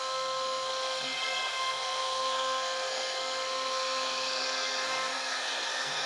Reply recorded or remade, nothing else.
remade